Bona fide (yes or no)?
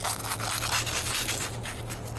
yes